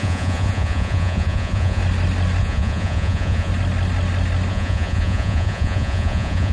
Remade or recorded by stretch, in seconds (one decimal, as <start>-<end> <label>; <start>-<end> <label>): 0.0-1.8 remade; 1.8-2.4 recorded; 2.4-3.5 remade; 3.5-4.5 recorded; 4.5-6.5 remade